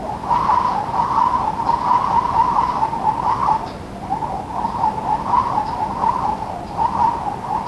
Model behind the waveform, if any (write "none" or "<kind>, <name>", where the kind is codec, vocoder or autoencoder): none